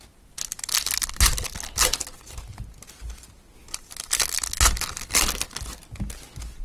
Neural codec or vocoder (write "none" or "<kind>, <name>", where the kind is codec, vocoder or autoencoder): none